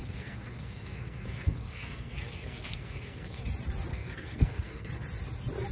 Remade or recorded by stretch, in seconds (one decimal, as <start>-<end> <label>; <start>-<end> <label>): 0.0-3.4 remade; 3.4-3.9 recorded; 3.9-4.9 remade; 4.9-5.7 recorded